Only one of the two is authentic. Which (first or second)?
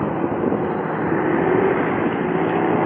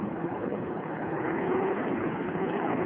first